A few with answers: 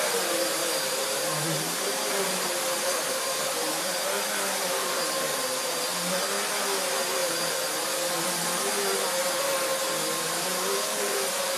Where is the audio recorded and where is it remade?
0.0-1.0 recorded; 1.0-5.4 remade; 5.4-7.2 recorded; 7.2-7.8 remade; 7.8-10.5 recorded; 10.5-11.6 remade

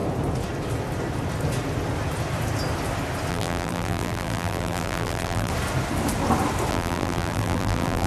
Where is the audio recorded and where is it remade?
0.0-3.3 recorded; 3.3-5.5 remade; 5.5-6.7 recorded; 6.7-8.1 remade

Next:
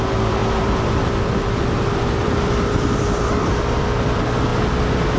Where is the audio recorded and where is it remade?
0.0-4.5 remade; 4.5-5.2 recorded